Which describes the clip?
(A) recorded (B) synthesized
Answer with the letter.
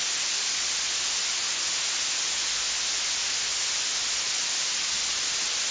A